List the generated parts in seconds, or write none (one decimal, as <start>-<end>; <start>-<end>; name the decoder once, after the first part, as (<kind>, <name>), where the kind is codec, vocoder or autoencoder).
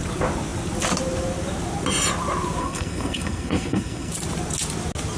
2.6-4.1 (codec, SNAC)